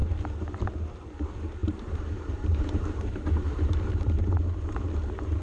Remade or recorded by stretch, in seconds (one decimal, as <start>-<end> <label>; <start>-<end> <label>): 0.0-1.6 recorded; 1.6-4.8 remade; 4.8-5.4 recorded